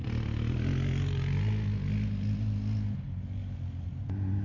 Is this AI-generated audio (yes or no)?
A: no